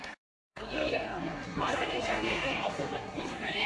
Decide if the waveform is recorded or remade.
remade